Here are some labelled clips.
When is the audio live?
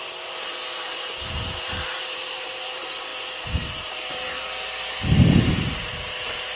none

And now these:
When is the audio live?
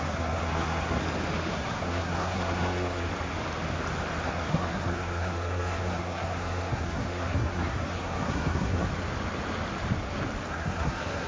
1.0-1.5; 3.1-4.3; 8.9-10.5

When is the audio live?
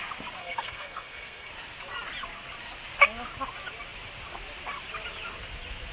0.0-0.4; 1.5-5.9